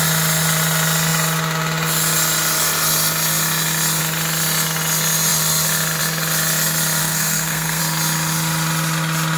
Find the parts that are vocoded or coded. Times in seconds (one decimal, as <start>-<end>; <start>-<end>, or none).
7.0-7.8